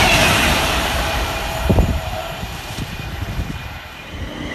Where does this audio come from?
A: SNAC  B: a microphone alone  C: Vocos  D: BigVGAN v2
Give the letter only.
D